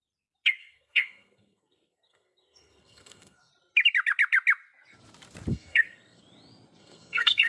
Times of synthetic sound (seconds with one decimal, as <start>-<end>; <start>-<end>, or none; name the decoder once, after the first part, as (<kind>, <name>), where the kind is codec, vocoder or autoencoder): 0.6-3.5 (codec, SNAC); 5.5-6.2; 6.8-7.5